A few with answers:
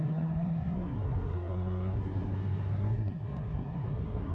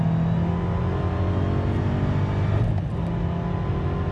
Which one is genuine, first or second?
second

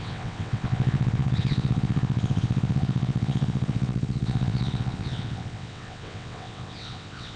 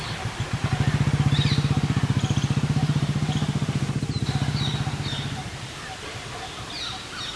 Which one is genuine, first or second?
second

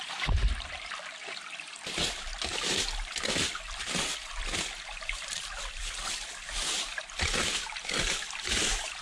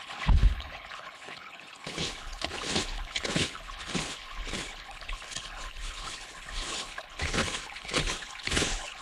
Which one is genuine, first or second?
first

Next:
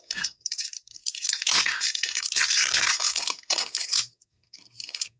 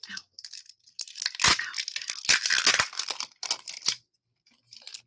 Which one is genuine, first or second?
second